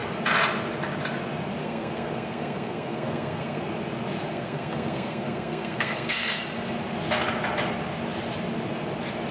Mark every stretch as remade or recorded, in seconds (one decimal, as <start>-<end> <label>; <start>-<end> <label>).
0.0-1.6 recorded; 1.6-3.6 remade; 3.6-4.3 recorded; 4.3-6.4 remade; 6.4-9.3 recorded